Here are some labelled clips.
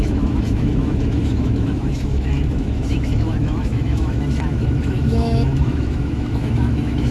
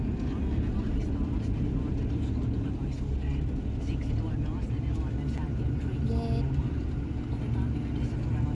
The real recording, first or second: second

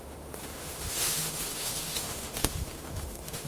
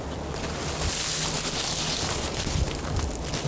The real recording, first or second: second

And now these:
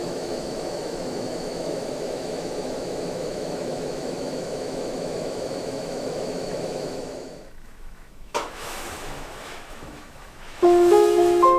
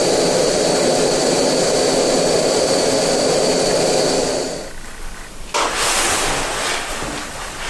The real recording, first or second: second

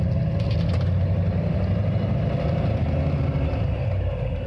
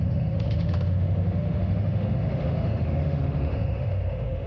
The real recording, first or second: first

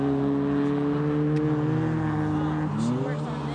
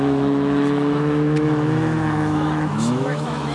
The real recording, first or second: first